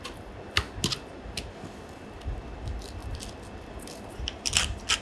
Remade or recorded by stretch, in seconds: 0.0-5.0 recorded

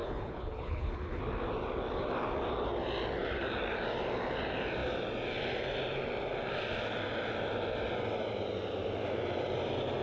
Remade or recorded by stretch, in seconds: 0.0-1.2 remade; 1.2-10.0 recorded

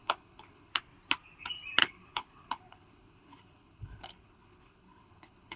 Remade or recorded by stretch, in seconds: 0.0-0.7 remade; 0.7-1.8 recorded; 1.8-5.6 remade

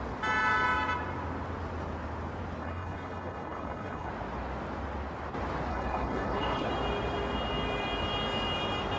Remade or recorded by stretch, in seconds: 0.0-2.6 recorded; 2.6-4.1 remade; 4.1-5.7 recorded; 5.7-6.7 remade; 6.7-9.0 recorded

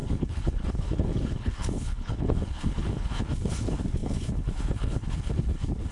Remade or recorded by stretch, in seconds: 0.0-5.9 remade